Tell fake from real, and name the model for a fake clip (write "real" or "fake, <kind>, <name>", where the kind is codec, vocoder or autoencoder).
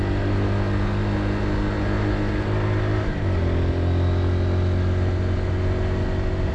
real